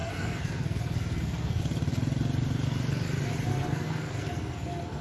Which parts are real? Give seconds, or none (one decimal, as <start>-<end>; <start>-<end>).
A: 1.6-3.5